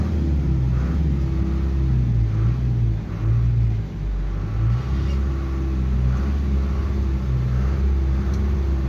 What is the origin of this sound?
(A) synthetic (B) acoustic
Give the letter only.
B